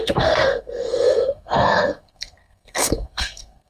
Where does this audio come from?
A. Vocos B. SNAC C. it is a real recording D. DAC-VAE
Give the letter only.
B